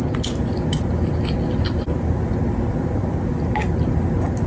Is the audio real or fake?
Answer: real